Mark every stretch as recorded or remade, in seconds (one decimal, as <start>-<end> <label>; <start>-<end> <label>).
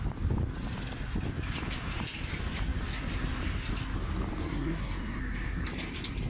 0.0-4.4 recorded; 4.4-5.2 remade; 5.2-6.3 recorded